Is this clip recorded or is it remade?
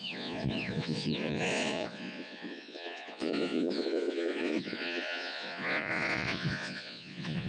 remade